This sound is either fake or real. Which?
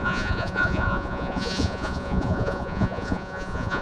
fake